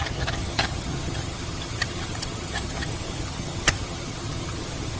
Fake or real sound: fake